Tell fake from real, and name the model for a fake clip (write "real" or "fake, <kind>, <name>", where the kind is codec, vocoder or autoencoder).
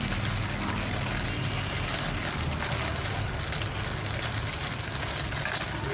real